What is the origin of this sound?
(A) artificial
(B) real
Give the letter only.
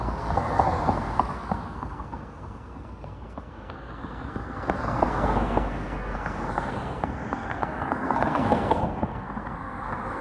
A